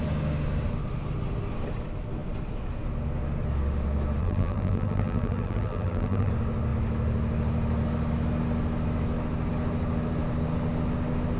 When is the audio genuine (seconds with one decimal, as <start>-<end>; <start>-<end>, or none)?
0.0-4.2; 6.3-11.4